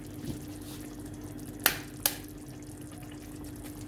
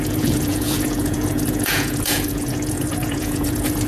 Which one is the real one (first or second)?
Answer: first